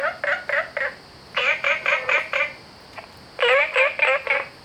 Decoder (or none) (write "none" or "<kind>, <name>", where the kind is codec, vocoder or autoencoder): none